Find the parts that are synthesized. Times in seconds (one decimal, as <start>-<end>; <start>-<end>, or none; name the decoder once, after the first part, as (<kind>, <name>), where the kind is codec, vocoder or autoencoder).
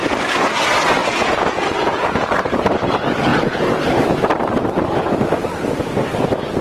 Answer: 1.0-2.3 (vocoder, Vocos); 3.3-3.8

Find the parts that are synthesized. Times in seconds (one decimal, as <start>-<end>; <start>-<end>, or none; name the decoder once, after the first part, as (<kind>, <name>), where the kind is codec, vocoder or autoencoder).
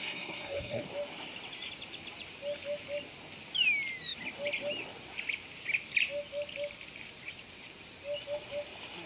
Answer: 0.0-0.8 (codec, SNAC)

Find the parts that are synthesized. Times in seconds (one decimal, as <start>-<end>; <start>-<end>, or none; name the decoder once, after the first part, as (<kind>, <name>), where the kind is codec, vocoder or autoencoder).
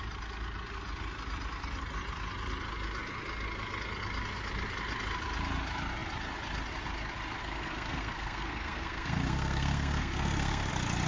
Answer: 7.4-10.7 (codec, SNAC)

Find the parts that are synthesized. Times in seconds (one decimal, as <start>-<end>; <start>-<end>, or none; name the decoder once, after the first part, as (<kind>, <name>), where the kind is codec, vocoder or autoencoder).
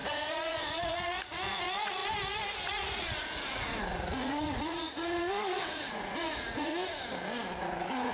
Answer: 0.0-6.7 (vocoder, Vocos); 7.6-8.1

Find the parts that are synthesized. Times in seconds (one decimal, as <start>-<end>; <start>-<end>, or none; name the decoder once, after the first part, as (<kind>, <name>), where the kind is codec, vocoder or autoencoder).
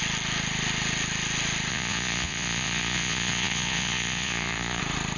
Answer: 1.7-4.8 (vocoder, Vocos)